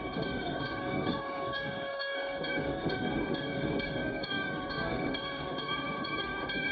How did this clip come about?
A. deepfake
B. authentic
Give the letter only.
A